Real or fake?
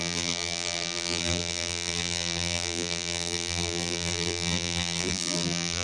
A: fake